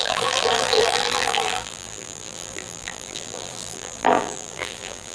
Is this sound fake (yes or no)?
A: yes